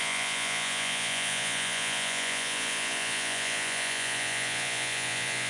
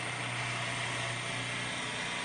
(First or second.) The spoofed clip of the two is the first